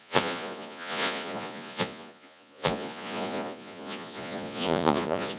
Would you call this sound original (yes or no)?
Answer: no